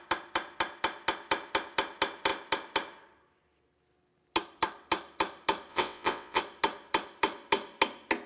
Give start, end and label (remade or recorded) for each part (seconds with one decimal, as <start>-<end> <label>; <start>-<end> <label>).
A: 0.0-5.7 recorded; 5.7-6.4 remade; 6.4-8.3 recorded